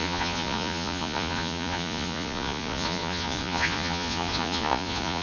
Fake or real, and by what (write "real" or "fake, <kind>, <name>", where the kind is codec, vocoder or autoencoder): fake, vocoder, Vocos